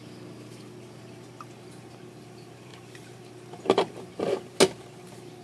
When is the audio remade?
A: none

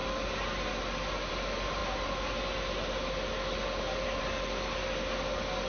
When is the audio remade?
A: none

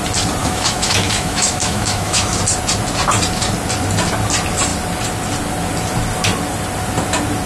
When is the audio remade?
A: 0.4-2.4 (autoencoder, DAC-VAE)

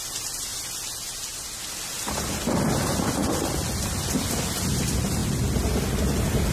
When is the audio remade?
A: none

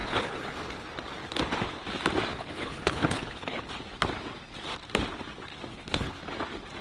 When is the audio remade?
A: 0.0-0.9 (codec, HILCodec); 2.3-3.6; 5.7-6.2

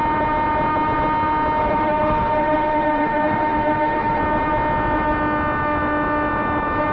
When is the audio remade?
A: 1.6-4.2 (autoencoder, DAC-VAE)

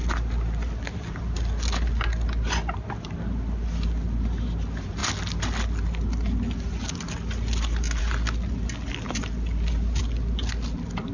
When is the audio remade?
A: none